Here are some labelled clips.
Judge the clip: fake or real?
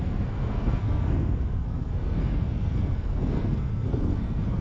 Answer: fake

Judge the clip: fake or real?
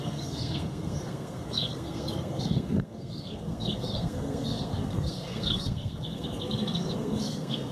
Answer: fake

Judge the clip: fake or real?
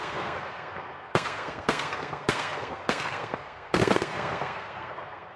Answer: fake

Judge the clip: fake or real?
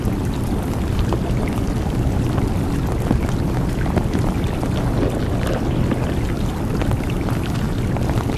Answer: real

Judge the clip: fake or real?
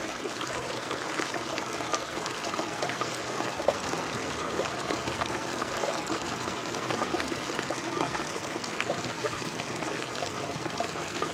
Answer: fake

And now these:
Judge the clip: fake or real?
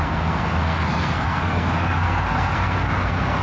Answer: fake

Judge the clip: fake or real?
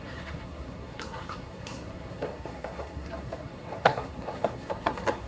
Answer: fake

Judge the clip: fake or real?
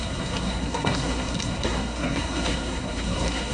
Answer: fake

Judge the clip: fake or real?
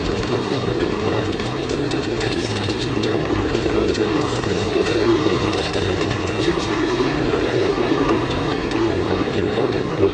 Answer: fake